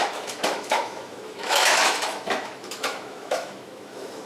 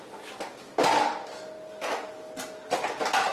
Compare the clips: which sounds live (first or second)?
second